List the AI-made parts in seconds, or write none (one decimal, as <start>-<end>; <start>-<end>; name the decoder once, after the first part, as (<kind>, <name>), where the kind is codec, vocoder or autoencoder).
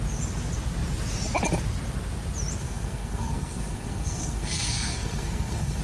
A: 2.6-5.8 (codec, SNAC)